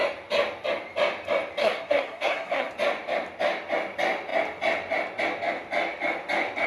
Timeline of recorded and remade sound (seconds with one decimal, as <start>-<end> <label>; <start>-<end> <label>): 0.0-1.6 recorded; 1.6-2.7 remade; 2.7-6.7 recorded